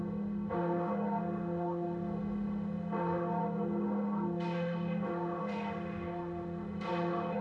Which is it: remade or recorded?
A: remade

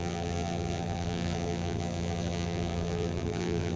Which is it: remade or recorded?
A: remade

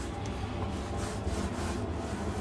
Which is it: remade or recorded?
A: recorded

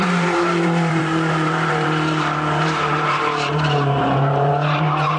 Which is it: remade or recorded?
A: remade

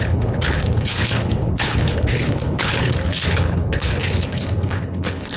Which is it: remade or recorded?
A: remade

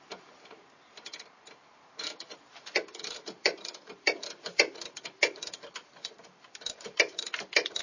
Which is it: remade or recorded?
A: remade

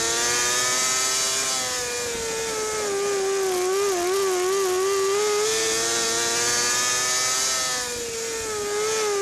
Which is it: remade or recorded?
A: recorded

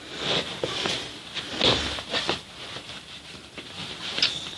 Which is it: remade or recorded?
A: recorded